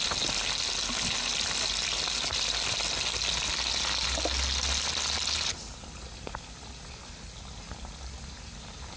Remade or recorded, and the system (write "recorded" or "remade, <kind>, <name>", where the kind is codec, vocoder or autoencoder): recorded